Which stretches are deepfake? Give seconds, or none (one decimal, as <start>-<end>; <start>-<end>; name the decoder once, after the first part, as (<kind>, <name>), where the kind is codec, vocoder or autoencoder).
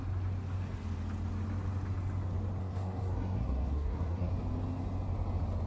2.6-4.3 (codec, SNAC)